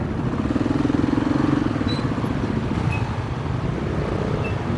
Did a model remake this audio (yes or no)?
no